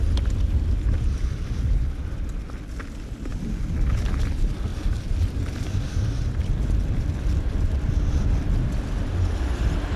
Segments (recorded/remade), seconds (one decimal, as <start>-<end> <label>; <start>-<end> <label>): 0.0-10.0 recorded